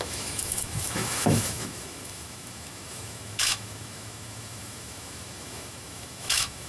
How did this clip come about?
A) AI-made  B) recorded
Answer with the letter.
A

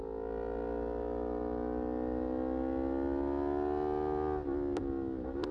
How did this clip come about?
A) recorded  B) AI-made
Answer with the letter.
A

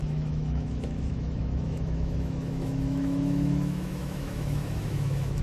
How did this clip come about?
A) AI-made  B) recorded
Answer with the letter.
A